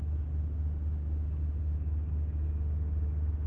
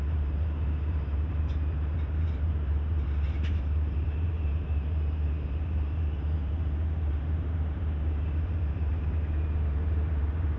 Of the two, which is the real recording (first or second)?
first